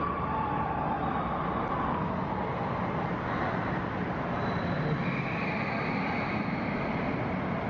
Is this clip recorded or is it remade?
recorded